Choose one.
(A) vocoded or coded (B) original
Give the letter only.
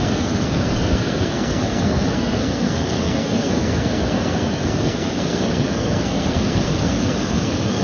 A